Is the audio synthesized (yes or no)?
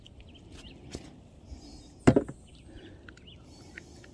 no